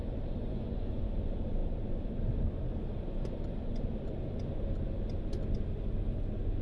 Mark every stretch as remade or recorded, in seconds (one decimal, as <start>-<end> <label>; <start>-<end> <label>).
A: 0.0-0.4 recorded; 0.4-1.0 remade; 1.0-6.6 recorded

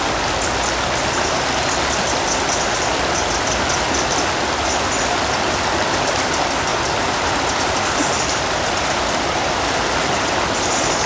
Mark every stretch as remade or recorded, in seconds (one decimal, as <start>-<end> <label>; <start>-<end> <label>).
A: 0.0-11.1 recorded

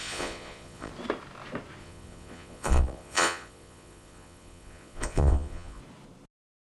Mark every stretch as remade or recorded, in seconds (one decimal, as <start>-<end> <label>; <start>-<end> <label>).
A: 0.0-0.9 remade; 0.9-1.8 recorded; 1.8-5.8 remade; 5.8-6.6 recorded

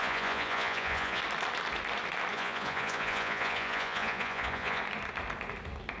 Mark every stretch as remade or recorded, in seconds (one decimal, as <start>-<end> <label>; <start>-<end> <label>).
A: 0.0-1.2 remade; 1.2-2.3 recorded; 2.3-4.8 remade; 4.8-6.0 recorded